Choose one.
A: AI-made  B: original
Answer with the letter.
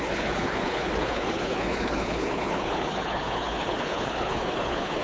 A